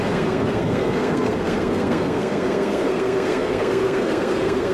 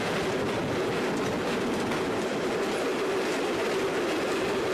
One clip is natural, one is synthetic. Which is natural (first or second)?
second